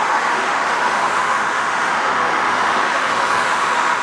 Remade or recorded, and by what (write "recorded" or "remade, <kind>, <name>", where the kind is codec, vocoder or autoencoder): remade, autoencoder, DAC-VAE